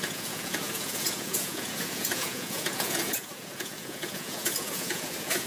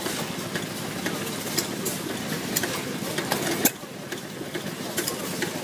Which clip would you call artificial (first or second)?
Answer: first